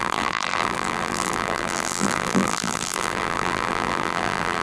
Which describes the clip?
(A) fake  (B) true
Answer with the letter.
A